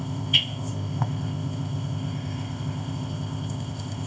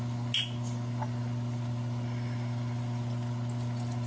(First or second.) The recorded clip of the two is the second